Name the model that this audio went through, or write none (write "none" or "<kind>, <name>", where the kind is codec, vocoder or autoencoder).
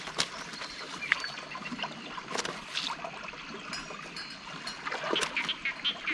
none